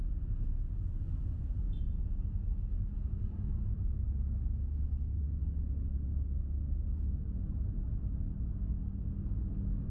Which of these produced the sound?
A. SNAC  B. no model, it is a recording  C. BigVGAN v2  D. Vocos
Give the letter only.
B